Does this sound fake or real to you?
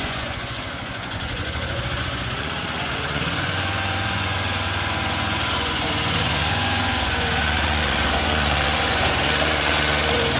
fake